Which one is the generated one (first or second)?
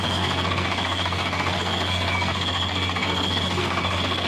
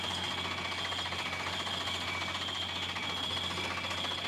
first